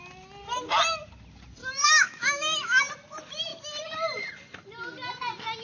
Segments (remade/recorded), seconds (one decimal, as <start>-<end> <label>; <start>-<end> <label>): 0.0-1.6 recorded; 1.6-2.8 remade; 2.8-5.6 recorded